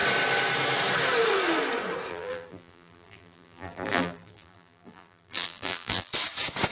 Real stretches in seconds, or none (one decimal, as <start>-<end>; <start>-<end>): 0.0-2.1; 6.1-6.7